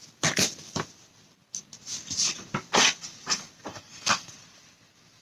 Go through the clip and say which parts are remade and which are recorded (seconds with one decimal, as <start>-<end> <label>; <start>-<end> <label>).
0.0-3.7 recorded; 3.7-4.3 remade; 4.3-5.2 recorded